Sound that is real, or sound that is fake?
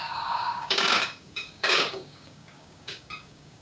fake